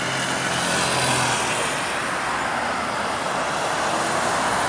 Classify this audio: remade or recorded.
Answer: recorded